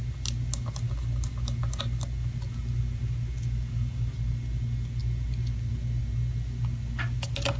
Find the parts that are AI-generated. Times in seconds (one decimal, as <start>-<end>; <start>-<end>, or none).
none